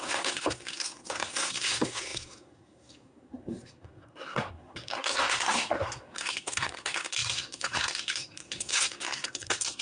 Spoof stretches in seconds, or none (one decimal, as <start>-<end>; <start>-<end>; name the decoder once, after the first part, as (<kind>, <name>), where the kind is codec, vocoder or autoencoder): 0.0-9.8 (codec, SNAC)